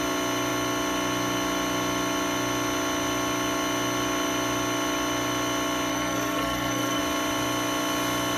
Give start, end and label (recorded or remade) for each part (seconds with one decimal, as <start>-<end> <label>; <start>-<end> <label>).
0.0-5.9 recorded; 5.9-7.0 remade; 7.0-8.4 recorded